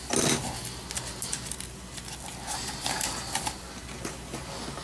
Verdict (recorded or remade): recorded